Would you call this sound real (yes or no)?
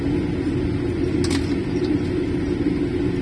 yes